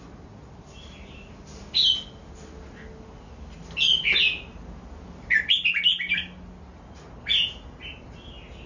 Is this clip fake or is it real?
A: real